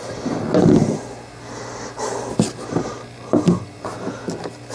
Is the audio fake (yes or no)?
no